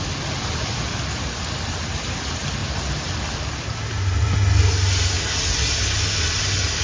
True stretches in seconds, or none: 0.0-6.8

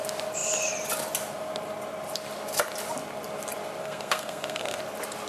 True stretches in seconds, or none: 0.0-3.8; 4.8-5.3

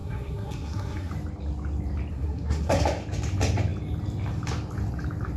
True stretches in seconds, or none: 1.1-2.1; 2.8-5.4

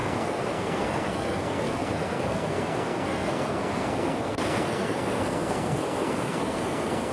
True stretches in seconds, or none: none

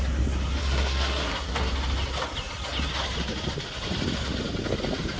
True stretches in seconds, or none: 0.0-0.6; 1.7-5.2

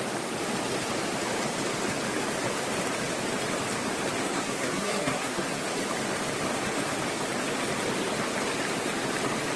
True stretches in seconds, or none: 0.0-4.2; 5.6-9.6

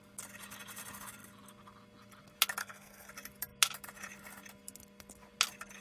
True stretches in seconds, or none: 0.0-2.6; 3.1-5.8

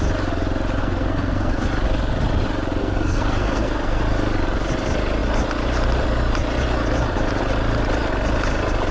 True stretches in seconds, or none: 0.0-0.8; 1.7-2.8; 4.0-8.9